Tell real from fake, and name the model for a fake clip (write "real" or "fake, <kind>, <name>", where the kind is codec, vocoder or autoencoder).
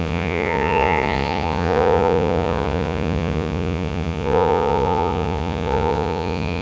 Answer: fake, vocoder, Vocos